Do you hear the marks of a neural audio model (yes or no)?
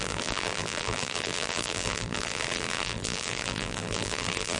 yes